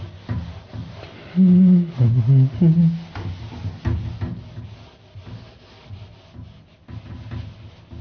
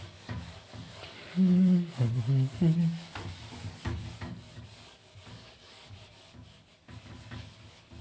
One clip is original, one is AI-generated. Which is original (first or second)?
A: first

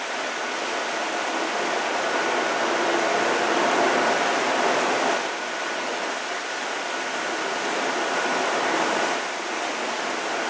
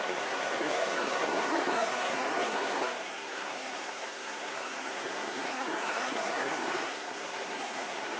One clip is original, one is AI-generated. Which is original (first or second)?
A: first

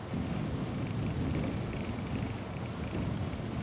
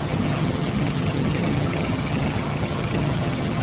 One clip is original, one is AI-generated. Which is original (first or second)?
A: first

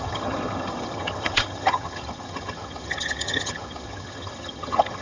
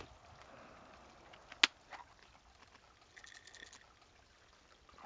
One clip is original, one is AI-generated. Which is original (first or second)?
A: second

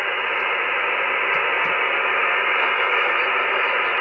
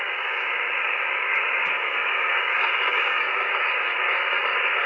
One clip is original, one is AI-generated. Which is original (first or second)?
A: first